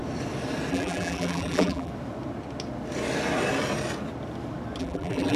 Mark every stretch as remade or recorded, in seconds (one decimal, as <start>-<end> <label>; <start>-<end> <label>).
0.0-0.7 recorded; 0.7-1.9 remade; 1.9-4.8 recorded; 4.8-5.4 remade